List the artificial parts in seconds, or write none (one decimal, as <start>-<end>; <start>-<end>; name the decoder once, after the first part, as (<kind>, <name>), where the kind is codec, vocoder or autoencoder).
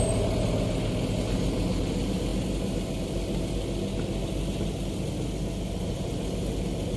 none